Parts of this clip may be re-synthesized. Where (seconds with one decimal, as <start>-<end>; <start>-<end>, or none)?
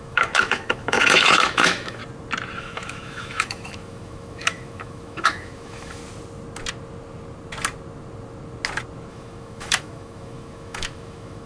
0.0-2.0; 2.6-6.0; 9.1-11.5